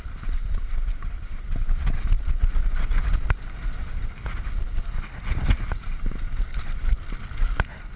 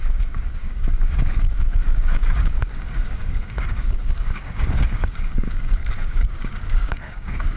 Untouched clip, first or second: first